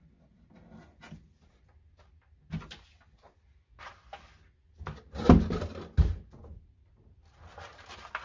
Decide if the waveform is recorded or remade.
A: recorded